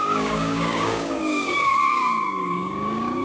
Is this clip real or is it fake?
fake